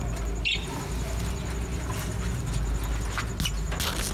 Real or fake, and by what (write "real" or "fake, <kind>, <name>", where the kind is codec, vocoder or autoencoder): real